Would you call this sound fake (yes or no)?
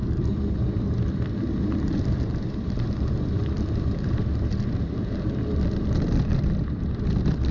yes